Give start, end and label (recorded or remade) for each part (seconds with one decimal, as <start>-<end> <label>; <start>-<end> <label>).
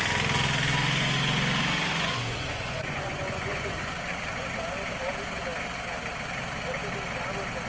0.0-1.9 recorded; 1.9-3.9 remade; 3.9-7.7 recorded